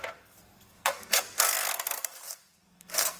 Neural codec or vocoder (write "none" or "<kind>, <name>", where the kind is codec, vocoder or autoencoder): codec, SNAC